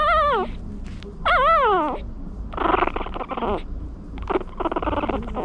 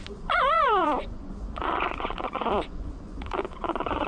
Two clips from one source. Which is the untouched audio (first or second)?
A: first